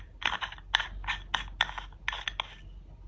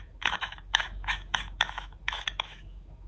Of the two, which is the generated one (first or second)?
second